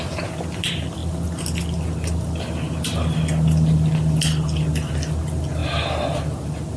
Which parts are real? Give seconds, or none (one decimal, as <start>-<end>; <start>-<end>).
0.0-6.8